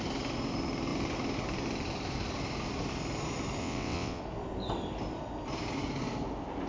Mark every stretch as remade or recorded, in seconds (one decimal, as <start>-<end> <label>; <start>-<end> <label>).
0.0-3.6 recorded; 3.6-4.2 remade; 4.2-6.7 recorded